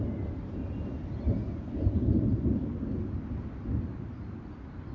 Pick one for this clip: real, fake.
real